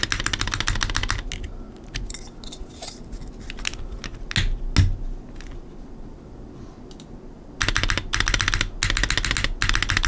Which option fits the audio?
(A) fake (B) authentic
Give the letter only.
B